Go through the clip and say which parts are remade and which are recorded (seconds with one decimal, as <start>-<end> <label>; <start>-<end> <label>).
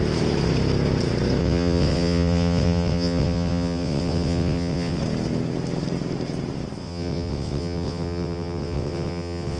0.0-1.4 recorded; 1.4-5.0 remade; 5.0-6.8 recorded; 6.8-9.6 remade